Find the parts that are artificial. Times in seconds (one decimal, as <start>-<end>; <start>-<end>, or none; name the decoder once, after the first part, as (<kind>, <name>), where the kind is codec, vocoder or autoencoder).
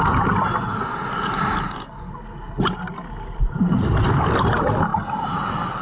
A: none